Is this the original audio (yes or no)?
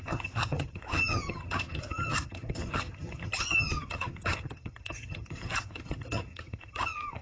no